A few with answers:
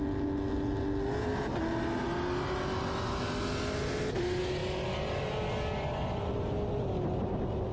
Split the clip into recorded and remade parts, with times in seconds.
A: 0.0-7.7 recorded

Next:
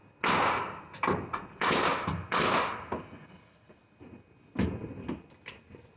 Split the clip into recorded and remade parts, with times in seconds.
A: 0.0-6.0 recorded

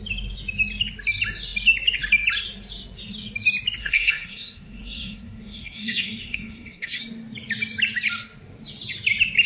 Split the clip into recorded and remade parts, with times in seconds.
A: 0.0-3.8 recorded; 3.8-7.0 remade; 7.0-9.5 recorded

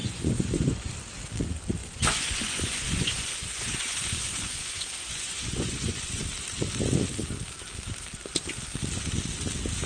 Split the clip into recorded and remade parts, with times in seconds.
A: 0.0-0.9 remade; 0.9-1.8 recorded; 1.8-6.2 remade; 6.2-9.9 recorded

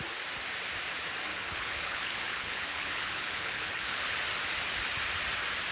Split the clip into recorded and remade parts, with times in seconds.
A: 0.0-1.3 recorded; 1.3-4.2 remade; 4.2-5.7 recorded